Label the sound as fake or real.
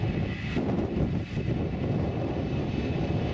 real